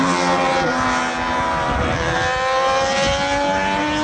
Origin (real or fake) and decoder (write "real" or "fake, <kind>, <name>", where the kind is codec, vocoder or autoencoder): real